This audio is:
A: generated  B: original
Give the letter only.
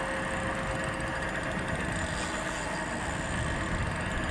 B